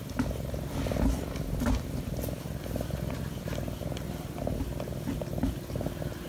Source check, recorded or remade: recorded